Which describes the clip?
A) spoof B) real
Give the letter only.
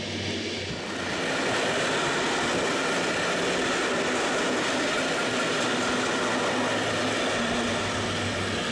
B